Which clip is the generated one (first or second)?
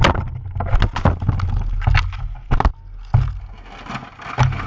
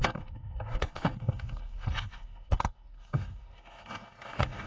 second